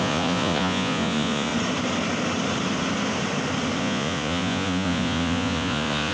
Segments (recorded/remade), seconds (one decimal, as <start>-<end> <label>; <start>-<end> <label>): 0.0-1.5 remade; 1.5-3.8 recorded; 3.8-6.1 remade